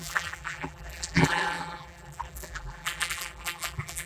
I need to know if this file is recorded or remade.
remade